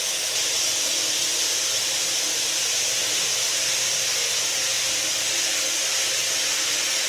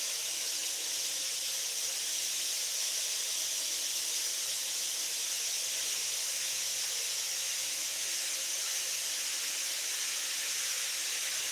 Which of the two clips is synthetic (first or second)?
second